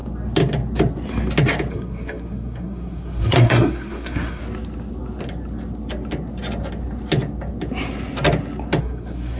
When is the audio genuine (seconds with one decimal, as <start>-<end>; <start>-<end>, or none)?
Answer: 0.0-1.7; 4.4-8.8